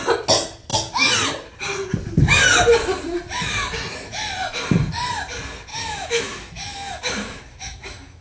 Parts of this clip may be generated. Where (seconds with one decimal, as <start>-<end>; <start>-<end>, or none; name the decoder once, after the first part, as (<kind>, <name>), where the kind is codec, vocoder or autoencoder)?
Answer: 5.7-8.2 (autoencoder, DAC-VAE)